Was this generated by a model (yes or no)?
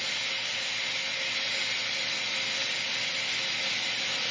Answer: no